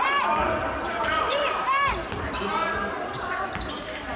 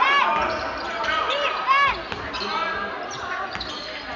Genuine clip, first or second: second